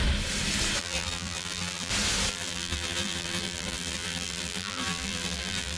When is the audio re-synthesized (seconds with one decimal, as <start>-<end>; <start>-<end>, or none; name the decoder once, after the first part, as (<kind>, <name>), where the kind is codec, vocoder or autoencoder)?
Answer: 0.8-1.9 (vocoder, BigVGAN v2); 2.3-5.8